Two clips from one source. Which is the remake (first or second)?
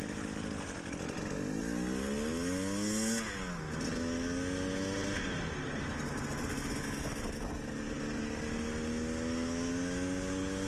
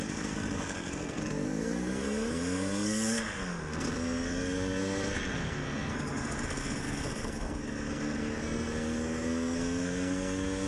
second